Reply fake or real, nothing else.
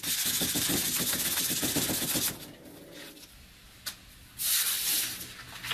real